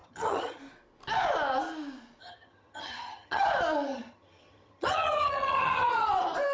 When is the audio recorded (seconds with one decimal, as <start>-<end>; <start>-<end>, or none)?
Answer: 0.6-2.2; 3.4-3.9; 6.1-6.5

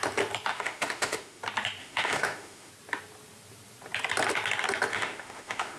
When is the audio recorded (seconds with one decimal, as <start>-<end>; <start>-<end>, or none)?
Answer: 0.0-0.5; 1.4-1.8; 2.7-4.9

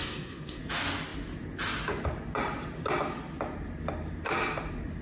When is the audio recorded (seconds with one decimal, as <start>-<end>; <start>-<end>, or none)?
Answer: 0.6-5.0

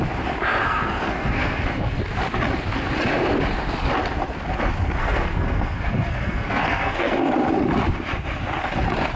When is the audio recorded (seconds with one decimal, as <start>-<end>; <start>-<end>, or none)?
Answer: 0.0-0.6; 2.0-5.0; 7.3-9.2